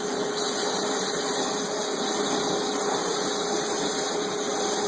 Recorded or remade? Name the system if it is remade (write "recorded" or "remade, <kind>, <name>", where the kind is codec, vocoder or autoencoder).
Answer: recorded